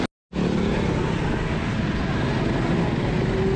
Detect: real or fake real